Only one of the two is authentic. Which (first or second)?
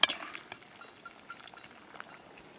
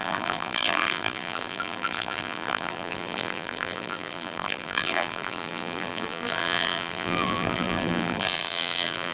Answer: first